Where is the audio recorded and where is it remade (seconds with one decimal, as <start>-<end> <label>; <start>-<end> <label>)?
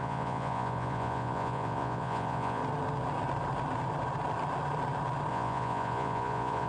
0.0-2.6 remade; 2.6-5.3 recorded; 5.3-6.7 remade